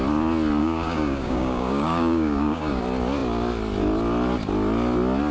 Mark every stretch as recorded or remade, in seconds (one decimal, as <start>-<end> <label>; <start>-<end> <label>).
0.0-0.6 recorded; 0.6-2.8 remade; 2.8-5.3 recorded